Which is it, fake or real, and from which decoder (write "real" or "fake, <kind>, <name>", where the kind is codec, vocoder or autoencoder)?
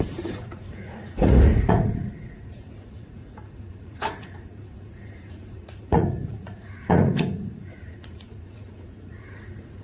fake, vocoder, Vocos